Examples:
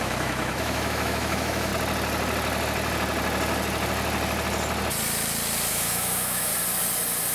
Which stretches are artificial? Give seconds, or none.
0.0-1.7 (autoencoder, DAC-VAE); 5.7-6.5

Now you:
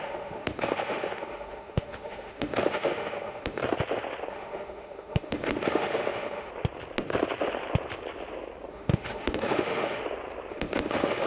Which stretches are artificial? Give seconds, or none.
0.0-3.6 (autoencoder, DAC-VAE); 4.3-6.5; 8.7-10.0; 10.5-11.3

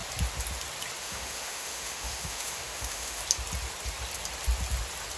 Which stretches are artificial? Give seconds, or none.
1.0-3.2 (autoencoder, DAC-VAE)